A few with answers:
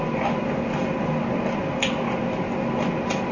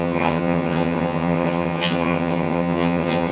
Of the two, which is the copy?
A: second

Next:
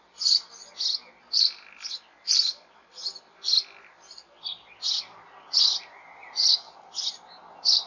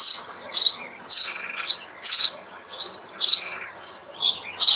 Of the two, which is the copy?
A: second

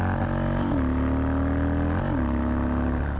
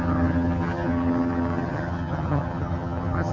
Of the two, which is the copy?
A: second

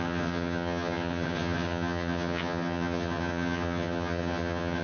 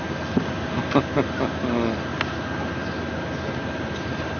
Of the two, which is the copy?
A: first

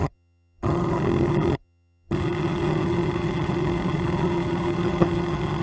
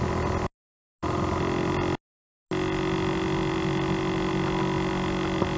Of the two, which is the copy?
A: first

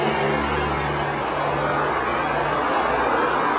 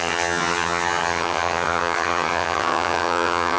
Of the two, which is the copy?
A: second